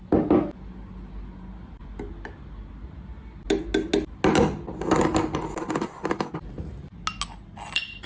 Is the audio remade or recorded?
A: recorded